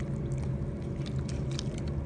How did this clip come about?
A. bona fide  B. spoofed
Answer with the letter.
A